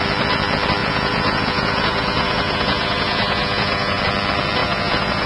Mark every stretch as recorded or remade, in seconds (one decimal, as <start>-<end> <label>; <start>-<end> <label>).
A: 0.0-0.8 recorded; 0.8-4.0 remade; 4.0-4.6 recorded; 4.6-5.3 remade